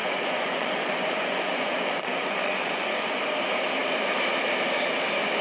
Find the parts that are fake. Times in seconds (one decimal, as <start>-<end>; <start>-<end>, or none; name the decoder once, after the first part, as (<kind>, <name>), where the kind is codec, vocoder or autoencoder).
0.0-3.2 (vocoder, Vocos)